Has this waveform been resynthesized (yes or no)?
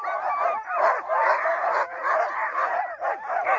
no